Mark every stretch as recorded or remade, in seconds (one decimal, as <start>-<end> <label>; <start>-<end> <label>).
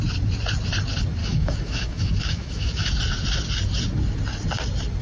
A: 0.0-1.2 recorded; 1.2-2.9 remade; 2.9-5.0 recorded